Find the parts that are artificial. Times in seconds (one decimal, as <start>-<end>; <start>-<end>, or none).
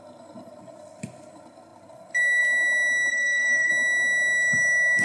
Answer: 3.1-3.7